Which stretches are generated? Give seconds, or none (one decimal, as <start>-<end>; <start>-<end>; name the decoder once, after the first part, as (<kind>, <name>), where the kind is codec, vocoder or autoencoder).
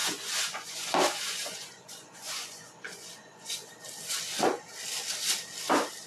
0.0-3.7 (vocoder, Vocos)